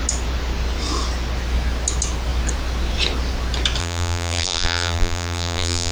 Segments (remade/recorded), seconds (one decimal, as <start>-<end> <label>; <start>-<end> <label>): 0.0-3.8 recorded; 3.8-5.9 remade